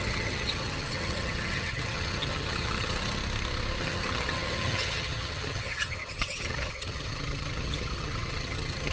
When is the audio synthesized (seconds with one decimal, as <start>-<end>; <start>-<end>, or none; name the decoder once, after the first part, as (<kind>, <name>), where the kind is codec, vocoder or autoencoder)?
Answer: 0.0-3.2 (vocoder, HiFi-GAN); 3.8-8.9